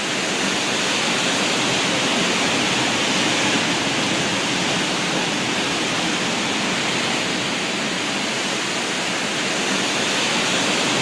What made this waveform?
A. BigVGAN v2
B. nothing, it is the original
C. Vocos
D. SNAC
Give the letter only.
B